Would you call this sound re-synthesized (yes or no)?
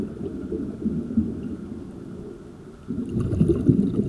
no